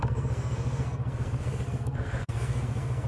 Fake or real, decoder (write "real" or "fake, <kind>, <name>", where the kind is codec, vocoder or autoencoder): fake, codec, SNAC